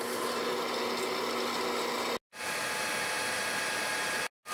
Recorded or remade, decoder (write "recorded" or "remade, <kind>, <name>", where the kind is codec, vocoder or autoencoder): recorded